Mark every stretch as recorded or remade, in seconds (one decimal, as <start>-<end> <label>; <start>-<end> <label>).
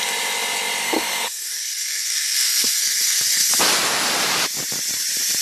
0.0-0.8 recorded; 0.8-3.5 remade; 3.5-5.4 recorded